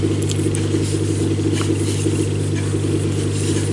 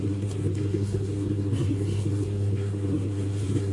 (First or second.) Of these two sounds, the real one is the first